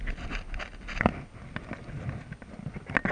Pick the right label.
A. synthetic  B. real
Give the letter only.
B